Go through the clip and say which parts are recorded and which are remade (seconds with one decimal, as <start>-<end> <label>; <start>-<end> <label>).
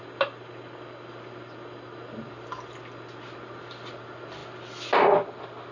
0.0-5.7 recorded